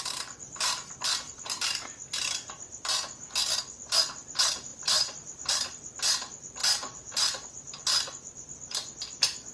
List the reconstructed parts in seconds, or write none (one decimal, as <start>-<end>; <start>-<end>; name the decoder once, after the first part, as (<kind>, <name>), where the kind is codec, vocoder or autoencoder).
4.7-5.5 (vocoder, BigVGAN v2); 6.6-7.8